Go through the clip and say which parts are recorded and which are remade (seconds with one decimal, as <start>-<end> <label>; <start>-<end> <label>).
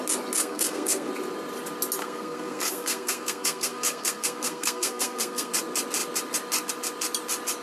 0.0-0.4 recorded; 0.4-1.1 remade; 1.1-2.0 recorded; 2.0-5.5 remade; 5.5-7.6 recorded